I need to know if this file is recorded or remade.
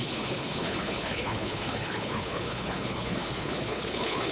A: remade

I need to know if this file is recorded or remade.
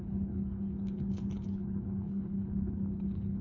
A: remade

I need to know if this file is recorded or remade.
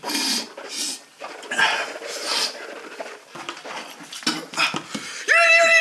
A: recorded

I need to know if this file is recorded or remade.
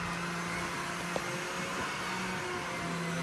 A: recorded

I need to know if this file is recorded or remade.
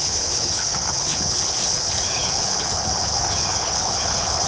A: remade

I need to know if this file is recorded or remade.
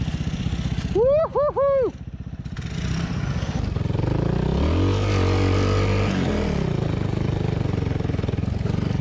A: recorded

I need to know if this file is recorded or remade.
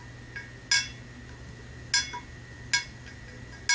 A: recorded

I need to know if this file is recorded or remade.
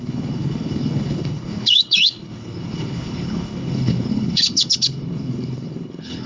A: remade